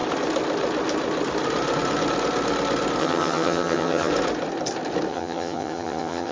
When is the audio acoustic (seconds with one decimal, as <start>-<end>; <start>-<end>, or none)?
0.0-3.0; 4.1-5.1

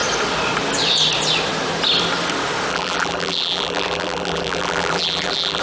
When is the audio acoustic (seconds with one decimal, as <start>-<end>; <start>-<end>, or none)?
0.0-2.7

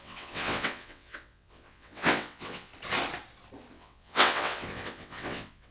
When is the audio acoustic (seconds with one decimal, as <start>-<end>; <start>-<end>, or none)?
2.7-3.7

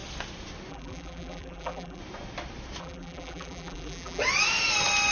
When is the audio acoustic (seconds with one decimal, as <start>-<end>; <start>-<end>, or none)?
0.0-0.7; 2.0-2.8; 4.2-5.1

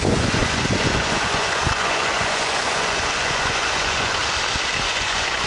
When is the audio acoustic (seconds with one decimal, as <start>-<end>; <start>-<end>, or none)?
4.2-4.8

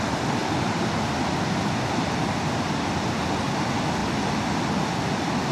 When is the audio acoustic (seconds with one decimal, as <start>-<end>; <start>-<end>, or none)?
0.0-5.5